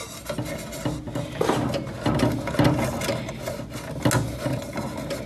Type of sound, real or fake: real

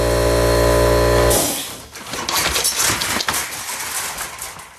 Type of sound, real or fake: real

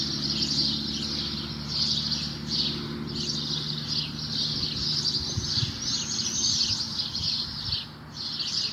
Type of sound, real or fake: real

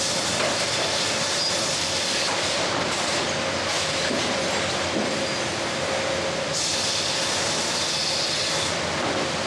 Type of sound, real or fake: real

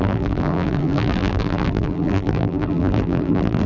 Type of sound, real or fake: fake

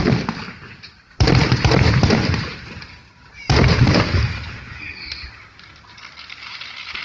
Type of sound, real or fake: fake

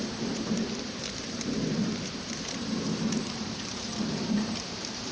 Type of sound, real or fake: fake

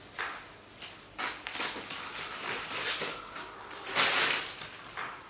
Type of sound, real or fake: real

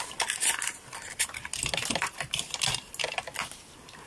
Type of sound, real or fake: real